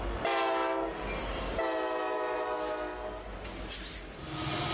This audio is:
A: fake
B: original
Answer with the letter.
B